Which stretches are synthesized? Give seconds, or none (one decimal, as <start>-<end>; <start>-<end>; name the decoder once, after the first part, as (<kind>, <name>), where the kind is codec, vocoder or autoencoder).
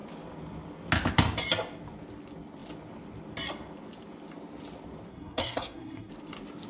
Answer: 5.1-6.1 (codec, SNAC)